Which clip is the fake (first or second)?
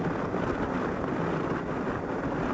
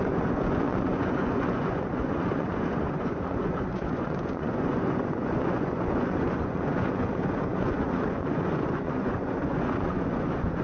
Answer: second